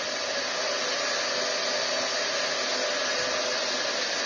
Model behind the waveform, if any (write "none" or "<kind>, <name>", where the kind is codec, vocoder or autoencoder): none